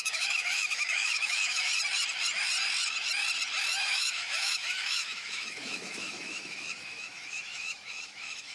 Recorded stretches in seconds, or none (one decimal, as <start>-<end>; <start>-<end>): 1.7-3.7